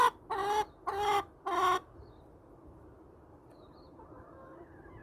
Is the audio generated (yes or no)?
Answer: no